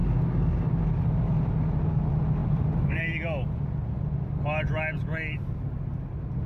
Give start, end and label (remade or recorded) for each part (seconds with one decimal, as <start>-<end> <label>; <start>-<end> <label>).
0.0-2.4 recorded; 2.4-3.0 remade; 3.0-6.5 recorded